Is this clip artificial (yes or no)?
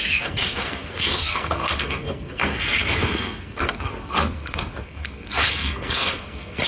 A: yes